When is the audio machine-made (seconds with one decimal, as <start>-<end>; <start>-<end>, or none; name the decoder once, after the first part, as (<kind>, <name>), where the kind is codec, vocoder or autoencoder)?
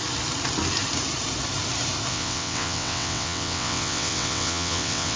2.1-5.2 (vocoder, WaveNeXt)